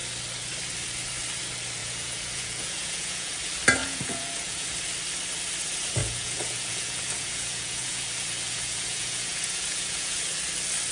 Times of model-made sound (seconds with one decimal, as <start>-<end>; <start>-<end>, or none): 1.8-3.3; 3.8-4.7; 6.0-10.2